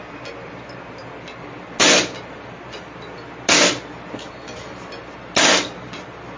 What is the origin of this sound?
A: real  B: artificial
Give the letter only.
A